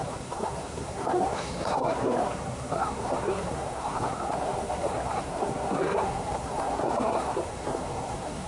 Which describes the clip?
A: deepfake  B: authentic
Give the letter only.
A